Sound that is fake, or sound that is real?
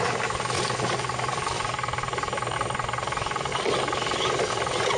real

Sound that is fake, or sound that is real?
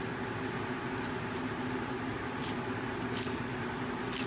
real